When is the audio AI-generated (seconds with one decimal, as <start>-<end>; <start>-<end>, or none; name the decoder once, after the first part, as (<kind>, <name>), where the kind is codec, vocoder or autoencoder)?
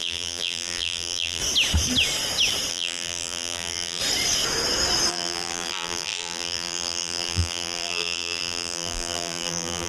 0.0-1.4 (vocoder, BigVGAN v2); 2.7-4.0; 5.1-9.9